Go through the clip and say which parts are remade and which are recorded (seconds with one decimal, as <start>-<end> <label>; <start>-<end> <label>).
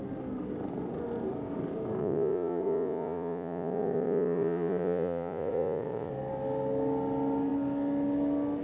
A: 0.0-2.0 recorded; 2.0-6.1 remade; 6.1-8.6 recorded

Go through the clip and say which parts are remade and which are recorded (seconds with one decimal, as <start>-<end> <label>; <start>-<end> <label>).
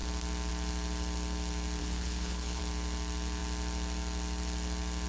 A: 0.0-1.8 recorded; 1.8-2.6 remade; 2.6-5.1 recorded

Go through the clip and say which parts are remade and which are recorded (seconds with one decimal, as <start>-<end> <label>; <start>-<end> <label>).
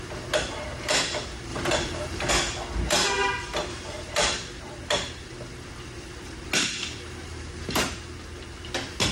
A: 0.0-1.5 recorded; 1.5-2.3 remade; 2.3-7.3 recorded; 7.3-8.0 remade; 8.0-9.1 recorded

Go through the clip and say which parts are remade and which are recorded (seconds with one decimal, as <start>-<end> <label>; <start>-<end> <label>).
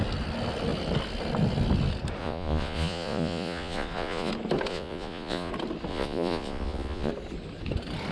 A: 0.0-2.2 recorded; 2.2-4.3 remade; 4.3-4.7 recorded; 4.7-5.5 remade; 5.5-5.9 recorded; 5.9-7.1 remade; 7.1-8.1 recorded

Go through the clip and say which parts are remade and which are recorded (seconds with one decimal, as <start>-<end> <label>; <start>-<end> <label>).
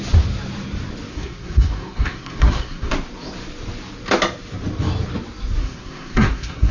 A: 0.0-1.1 recorded; 1.1-2.9 remade; 2.9-5.6 recorded; 5.6-6.7 remade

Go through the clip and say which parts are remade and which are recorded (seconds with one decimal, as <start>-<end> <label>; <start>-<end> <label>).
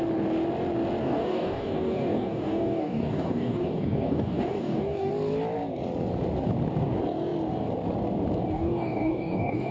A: 0.0-1.0 recorded; 1.0-5.1 remade; 5.1-8.5 recorded; 8.5-9.7 remade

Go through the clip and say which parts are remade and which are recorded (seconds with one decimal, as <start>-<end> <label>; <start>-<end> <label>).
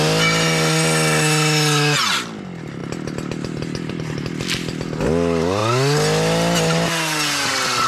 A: 0.0-7.9 recorded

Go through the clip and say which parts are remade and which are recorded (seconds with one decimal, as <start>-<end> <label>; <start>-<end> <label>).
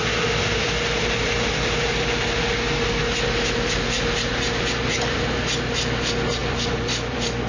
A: 0.0-6.4 recorded; 6.4-7.5 remade